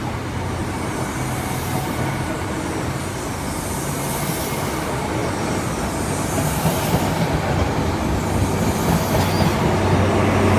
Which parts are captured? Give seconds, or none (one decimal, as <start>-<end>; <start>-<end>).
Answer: 0.0-0.6; 3.0-5.2; 5.7-10.6